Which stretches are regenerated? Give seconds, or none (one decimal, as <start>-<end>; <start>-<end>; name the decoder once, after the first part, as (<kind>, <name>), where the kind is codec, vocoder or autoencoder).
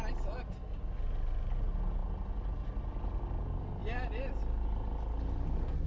none